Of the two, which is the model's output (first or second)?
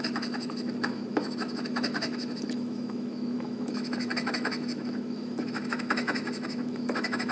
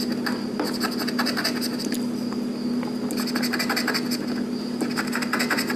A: first